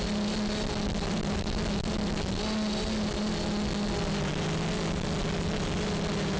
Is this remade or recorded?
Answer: recorded